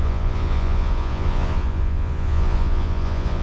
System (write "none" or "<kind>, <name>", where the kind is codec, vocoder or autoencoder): vocoder, Vocos